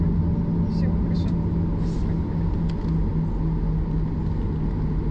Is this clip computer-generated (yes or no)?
no